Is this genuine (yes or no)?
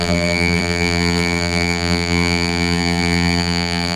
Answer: no